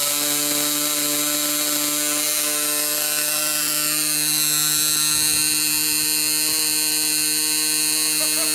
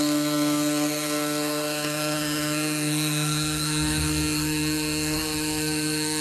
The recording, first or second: first